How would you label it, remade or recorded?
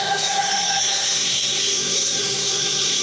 remade